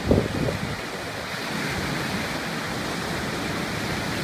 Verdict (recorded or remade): recorded